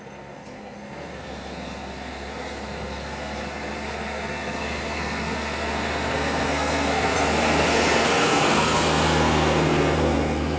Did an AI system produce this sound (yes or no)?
yes